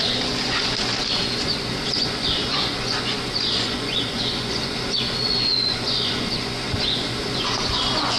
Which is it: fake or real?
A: fake